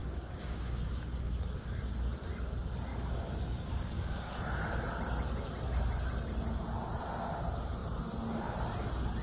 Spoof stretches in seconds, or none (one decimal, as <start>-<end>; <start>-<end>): 0.0-1.8; 2.9-4.3